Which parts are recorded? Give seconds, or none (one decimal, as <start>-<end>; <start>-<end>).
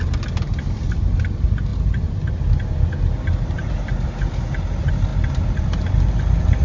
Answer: 0.0-6.6